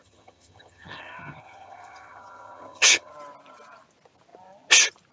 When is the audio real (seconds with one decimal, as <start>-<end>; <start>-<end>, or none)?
3.1-5.1